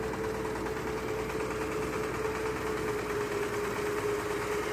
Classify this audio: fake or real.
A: real